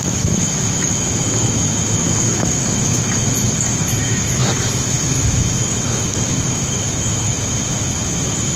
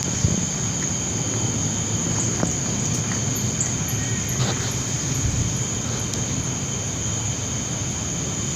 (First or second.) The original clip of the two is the second